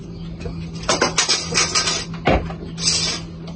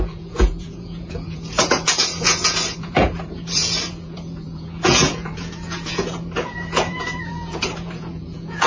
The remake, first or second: second